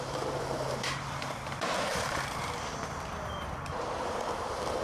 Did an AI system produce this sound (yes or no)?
yes